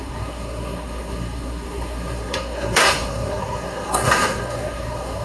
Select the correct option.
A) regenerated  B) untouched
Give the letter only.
A